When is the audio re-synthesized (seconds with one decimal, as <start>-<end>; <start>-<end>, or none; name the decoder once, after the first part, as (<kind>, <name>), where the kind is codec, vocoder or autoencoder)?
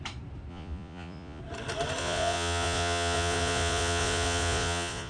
0.5-1.4 (vocoder, Vocos); 2.0-5.1